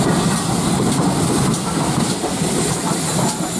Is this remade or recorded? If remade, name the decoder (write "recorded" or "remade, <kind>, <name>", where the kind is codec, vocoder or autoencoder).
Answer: recorded